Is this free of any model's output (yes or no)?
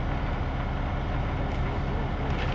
yes